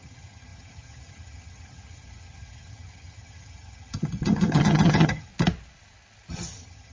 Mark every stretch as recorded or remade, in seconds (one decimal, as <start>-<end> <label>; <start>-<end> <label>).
0.0-5.3 remade; 5.3-6.3 recorded; 6.3-6.9 remade